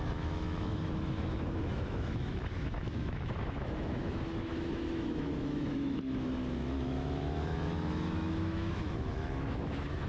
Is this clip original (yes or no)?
no